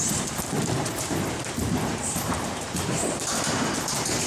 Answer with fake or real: fake